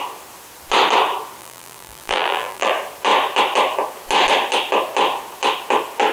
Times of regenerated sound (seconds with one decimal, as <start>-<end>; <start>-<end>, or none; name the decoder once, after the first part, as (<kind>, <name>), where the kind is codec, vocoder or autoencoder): 1.4-2.7 (vocoder, BigVGAN v2)